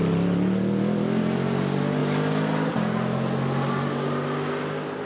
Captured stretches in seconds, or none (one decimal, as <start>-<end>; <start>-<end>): 0.0-5.1